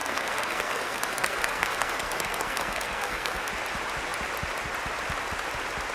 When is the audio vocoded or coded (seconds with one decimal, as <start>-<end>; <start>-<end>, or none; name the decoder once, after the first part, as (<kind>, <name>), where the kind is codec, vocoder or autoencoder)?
0.0-3.5 (codec, SNAC)